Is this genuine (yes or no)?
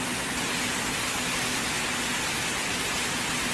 yes